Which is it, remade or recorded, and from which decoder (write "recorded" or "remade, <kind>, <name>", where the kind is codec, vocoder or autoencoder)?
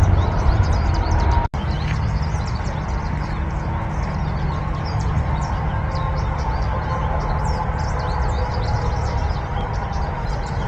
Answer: recorded